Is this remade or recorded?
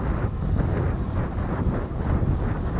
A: recorded